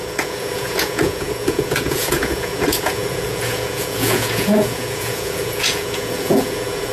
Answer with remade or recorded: remade